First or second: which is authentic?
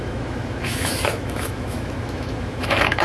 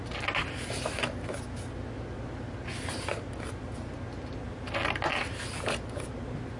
second